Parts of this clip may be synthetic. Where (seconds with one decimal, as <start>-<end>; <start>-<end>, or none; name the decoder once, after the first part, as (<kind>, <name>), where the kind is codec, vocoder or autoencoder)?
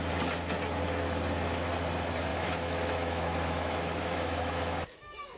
2.3-5.4 (autoencoder, DAC-VAE)